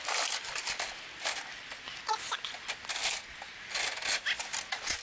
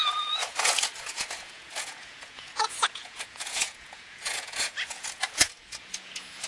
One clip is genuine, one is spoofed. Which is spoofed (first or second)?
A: second